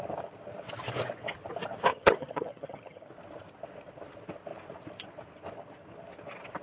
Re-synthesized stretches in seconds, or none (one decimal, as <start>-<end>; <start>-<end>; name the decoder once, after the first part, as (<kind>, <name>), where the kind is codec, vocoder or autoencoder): 1.9-3.1 (vocoder, HiFi-GAN)